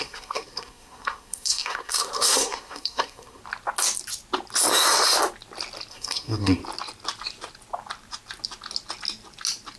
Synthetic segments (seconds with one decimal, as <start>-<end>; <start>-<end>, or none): 0.0-3.4; 5.9-6.6